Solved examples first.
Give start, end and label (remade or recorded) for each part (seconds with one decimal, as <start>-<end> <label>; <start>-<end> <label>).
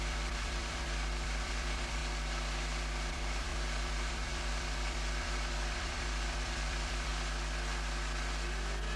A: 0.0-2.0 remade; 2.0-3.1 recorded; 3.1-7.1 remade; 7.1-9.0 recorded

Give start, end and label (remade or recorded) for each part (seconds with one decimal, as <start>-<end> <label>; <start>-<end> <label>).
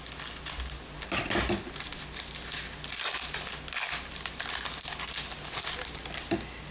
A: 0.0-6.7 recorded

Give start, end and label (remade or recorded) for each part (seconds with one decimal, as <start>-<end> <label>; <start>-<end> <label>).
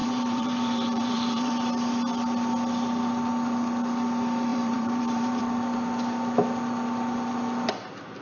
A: 0.0-1.5 remade; 1.5-4.5 recorded; 4.5-5.4 remade; 5.4-8.2 recorded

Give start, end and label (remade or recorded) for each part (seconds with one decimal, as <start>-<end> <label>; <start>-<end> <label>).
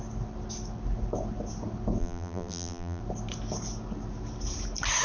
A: 0.0-2.0 recorded; 2.0-3.0 remade; 3.0-5.0 recorded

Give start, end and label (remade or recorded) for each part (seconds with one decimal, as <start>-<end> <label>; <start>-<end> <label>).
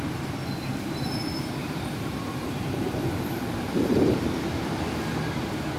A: 0.0-1.6 recorded; 1.6-4.4 remade; 4.4-5.8 recorded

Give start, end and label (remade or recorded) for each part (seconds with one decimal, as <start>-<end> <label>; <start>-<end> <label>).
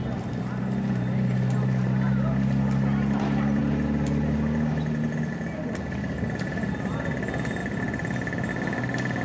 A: 0.0-9.2 recorded